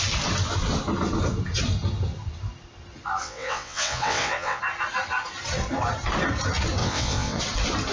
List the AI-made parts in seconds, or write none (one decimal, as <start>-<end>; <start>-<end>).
3.2-4.6; 6.8-7.4